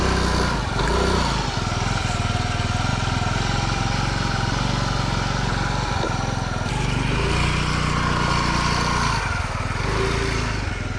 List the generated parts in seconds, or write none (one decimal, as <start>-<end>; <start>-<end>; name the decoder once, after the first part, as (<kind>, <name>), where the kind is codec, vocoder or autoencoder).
none